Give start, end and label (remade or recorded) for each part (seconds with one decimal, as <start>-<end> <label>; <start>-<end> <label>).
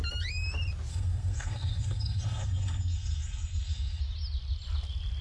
0.0-0.9 recorded; 0.9-4.0 remade; 4.0-5.2 recorded